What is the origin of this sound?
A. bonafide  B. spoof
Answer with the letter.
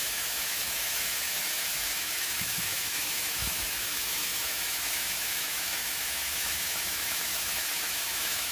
B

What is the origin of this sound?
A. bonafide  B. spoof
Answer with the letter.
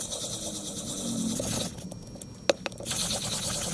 A